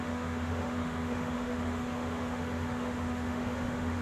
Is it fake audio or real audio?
fake